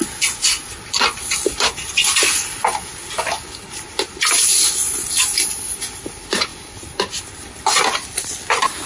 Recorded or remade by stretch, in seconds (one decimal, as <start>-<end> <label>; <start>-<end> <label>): 0.0-8.9 recorded